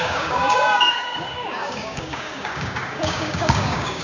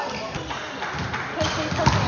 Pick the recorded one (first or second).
second